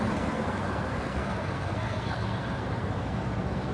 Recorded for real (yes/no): no